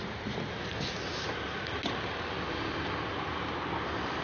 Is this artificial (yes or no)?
no